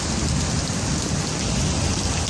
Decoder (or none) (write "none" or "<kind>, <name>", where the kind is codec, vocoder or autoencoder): none